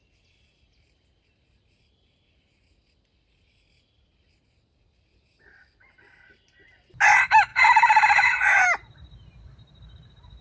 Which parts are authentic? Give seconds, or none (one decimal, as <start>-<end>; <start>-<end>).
0.0-7.5